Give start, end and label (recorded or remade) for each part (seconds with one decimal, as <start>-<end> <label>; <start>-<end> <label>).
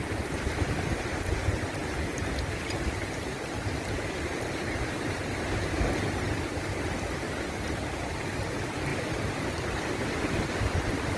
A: 0.0-11.2 recorded